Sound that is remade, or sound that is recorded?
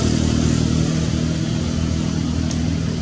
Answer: recorded